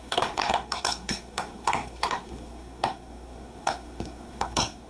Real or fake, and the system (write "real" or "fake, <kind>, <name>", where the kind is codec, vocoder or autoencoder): fake, codec, SNAC